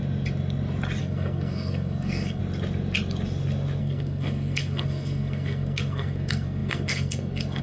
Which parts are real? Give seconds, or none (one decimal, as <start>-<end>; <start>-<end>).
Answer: 0.0-1.0; 2.4-3.8